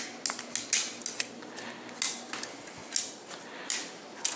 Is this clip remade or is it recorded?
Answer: recorded